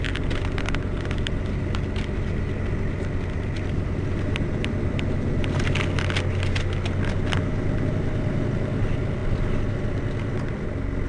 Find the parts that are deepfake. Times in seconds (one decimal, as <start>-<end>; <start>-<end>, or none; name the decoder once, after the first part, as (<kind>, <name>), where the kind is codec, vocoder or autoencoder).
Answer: none